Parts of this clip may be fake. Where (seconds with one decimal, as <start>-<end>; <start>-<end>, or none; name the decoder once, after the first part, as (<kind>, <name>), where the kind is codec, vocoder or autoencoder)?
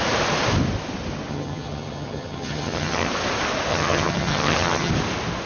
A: 1.3-3.1 (vocoder, HiFi-GAN); 3.7-4.9